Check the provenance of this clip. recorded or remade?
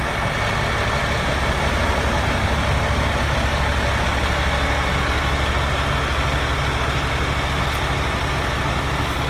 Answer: recorded